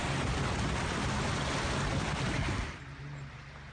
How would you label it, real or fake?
real